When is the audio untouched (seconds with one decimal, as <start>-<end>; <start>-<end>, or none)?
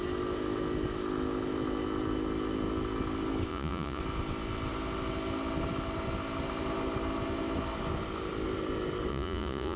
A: 0.0-3.5; 4.0-9.1